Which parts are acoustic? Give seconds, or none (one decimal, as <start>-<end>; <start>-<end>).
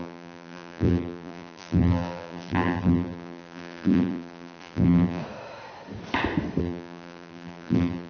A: 5.2-6.6